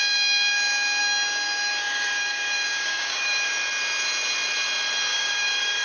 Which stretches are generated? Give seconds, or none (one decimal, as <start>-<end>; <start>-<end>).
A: 1.0-3.5; 5.1-5.8